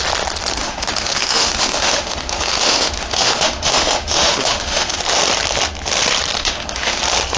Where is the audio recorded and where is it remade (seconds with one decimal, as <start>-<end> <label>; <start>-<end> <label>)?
0.0-0.6 recorded; 0.6-5.0 remade; 5.0-6.4 recorded; 6.4-7.0 remade; 7.0-7.4 recorded